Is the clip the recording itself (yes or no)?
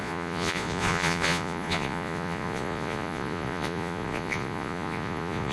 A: no